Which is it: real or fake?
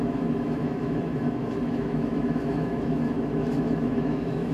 fake